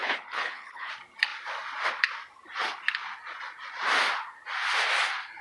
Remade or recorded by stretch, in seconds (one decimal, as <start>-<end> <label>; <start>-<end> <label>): 0.0-0.9 remade; 0.9-5.4 recorded